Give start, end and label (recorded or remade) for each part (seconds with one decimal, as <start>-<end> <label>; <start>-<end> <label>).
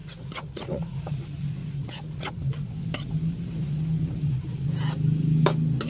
0.0-1.2 remade; 1.2-1.6 recorded; 1.6-2.3 remade; 2.3-5.9 recorded